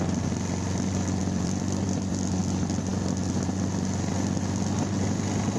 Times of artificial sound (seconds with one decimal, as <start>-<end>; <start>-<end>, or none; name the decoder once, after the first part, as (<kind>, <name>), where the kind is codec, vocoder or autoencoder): 1.2-2.4 (vocoder, BigVGAN v2)